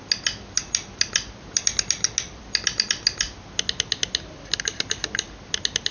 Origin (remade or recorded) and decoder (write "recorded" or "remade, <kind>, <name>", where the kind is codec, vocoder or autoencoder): recorded